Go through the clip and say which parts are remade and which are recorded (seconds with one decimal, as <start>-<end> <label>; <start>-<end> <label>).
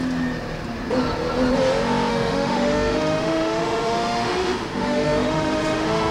0.0-2.1 recorded; 2.1-6.1 remade